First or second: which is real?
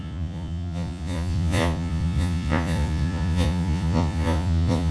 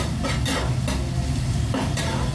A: second